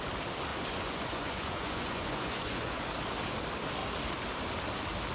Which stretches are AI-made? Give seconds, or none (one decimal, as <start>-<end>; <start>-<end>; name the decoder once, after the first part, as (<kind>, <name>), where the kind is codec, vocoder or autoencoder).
0.5-2.8 (vocoder, Vocos)